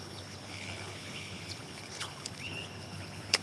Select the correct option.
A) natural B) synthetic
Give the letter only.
B